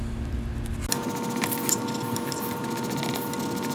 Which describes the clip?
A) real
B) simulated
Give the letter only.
A